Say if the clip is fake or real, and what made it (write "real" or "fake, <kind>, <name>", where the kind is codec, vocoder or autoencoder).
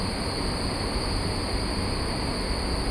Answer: real